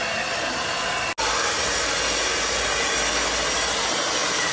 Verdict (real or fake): real